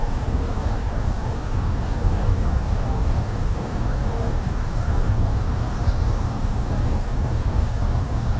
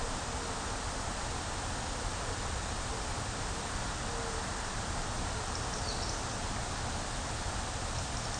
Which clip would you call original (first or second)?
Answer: second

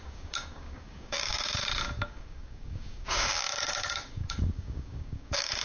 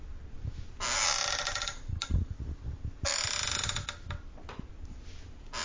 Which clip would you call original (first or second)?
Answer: second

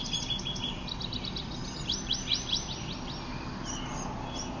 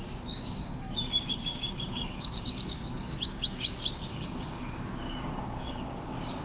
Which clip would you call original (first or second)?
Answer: first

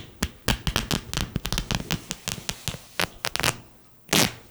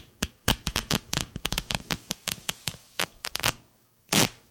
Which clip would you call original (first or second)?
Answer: first